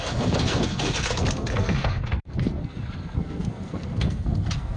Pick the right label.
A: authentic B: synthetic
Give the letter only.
B